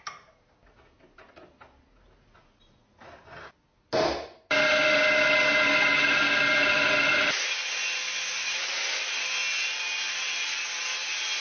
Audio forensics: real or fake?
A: real